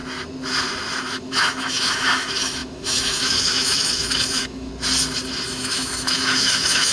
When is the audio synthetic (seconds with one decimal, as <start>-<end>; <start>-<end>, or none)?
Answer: 1.0-4.7; 5.5-6.9